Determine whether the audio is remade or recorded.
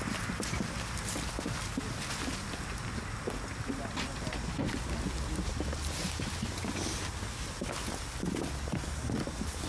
recorded